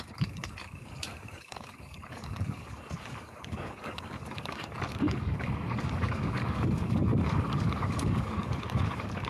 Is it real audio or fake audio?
fake